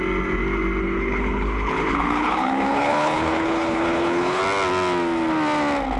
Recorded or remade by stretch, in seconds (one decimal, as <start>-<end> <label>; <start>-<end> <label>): 0.0-0.8 recorded; 0.8-4.4 remade; 4.4-6.0 recorded